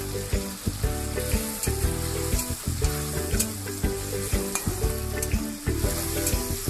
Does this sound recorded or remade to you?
recorded